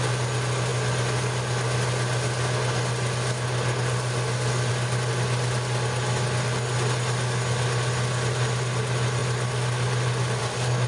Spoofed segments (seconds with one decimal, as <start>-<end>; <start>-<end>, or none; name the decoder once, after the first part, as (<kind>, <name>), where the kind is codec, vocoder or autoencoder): none